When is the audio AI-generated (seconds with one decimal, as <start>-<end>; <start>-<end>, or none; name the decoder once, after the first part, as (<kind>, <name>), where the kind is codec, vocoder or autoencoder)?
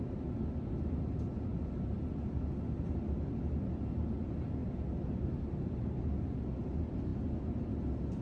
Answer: 1.5-3.3 (vocoder, BigVGAN v2); 4.6-6.1